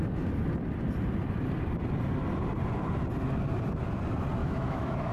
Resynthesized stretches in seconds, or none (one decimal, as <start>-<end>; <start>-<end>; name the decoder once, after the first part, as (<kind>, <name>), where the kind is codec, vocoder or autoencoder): 4.4-5.1 (autoencoder, DAC-VAE)